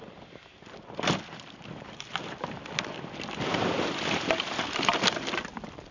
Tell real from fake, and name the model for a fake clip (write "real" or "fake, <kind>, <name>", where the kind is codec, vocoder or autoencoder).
real